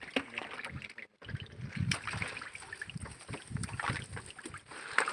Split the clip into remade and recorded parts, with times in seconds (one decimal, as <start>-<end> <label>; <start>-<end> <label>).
0.0-5.1 recorded